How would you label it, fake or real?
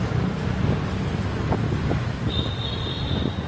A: real